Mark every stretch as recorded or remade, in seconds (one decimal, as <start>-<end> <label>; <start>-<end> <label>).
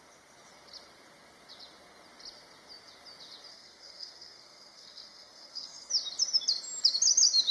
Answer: 0.0-3.5 recorded; 3.5-5.9 remade; 5.9-7.5 recorded